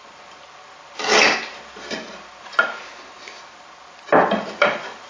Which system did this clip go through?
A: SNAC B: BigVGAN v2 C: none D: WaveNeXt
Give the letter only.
C